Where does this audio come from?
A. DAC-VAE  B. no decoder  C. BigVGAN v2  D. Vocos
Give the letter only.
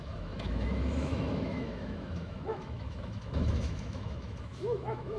A